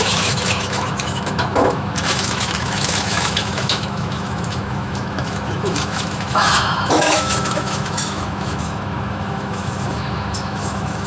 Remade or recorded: remade